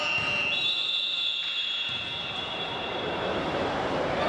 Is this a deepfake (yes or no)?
yes